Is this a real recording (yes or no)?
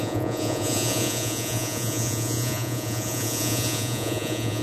no